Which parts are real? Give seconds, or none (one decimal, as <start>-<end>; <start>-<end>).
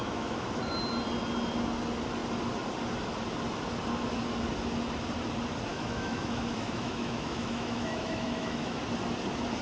0.6-5.7; 8.8-9.6